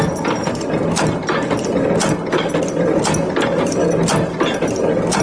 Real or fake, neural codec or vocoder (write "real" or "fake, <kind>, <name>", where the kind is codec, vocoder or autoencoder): real